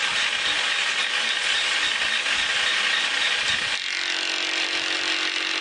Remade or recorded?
recorded